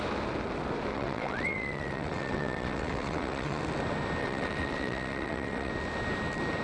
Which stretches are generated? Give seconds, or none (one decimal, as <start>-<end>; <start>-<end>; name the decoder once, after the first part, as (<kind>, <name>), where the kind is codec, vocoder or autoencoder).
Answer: 0.9-3.6 (vocoder, WaveNeXt); 4.2-5.7